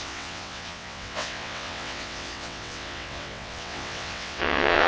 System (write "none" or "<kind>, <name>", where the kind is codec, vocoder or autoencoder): vocoder, WaveNeXt